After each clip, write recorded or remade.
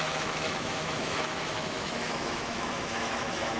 remade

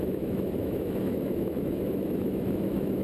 remade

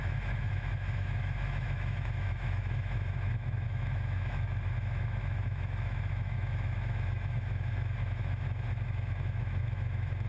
remade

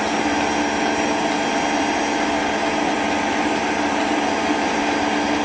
recorded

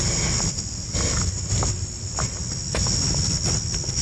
recorded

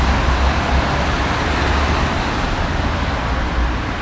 recorded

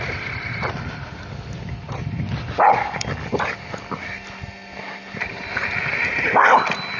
recorded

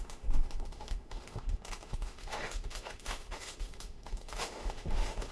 remade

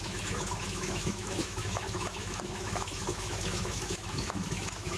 remade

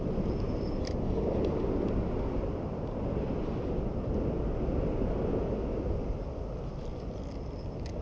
recorded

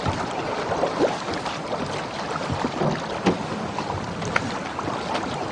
recorded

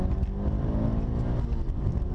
recorded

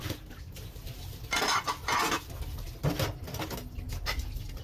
recorded